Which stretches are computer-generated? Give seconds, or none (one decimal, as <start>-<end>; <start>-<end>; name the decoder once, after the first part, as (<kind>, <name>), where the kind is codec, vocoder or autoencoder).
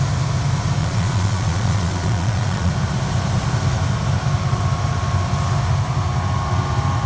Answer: 0.8-2.7 (vocoder, Vocos)